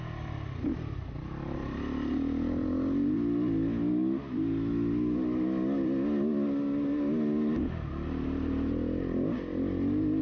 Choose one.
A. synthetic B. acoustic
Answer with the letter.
B